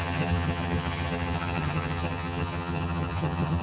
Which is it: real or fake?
fake